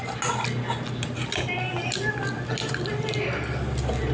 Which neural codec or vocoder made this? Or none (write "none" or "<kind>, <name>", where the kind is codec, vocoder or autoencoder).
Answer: none